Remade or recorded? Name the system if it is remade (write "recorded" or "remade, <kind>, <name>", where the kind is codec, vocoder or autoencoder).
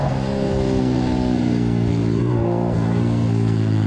remade, codec, SNAC